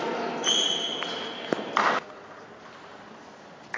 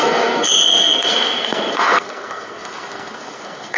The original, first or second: first